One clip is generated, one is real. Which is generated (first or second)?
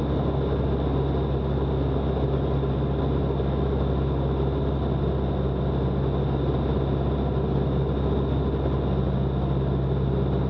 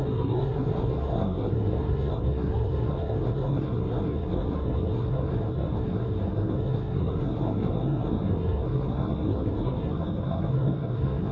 second